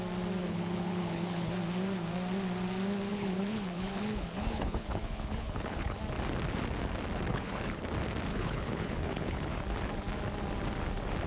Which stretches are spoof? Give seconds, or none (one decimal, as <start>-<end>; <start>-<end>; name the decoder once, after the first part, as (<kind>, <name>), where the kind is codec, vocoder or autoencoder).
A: 0.4-1.5 (codec, HILCodec); 3.1-6.0; 7.3-7.8; 8.3-9.6